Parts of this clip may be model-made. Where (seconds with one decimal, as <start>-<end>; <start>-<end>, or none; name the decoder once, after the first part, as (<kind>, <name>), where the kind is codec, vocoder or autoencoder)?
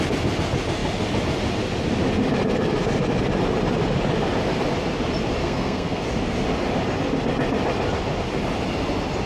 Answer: 5.4-6.0 (codec, SNAC)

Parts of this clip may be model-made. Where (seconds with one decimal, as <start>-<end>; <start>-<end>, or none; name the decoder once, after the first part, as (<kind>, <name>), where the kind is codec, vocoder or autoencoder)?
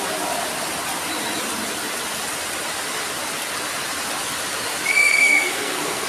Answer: 4.9-6.1 (codec, SNAC)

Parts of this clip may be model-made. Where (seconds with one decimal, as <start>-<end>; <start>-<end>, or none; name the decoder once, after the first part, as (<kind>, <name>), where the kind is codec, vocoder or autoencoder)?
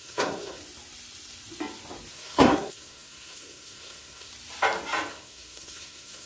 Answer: 0.0-0.6 (codec, SNAC); 2.1-4.3; 5.1-6.3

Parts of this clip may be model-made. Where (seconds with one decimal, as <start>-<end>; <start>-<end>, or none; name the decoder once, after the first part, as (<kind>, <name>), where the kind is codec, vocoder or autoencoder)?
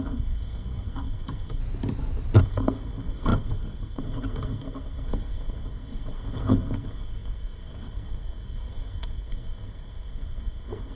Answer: 0.0-1.6 (codec, SNAC); 2.4-11.0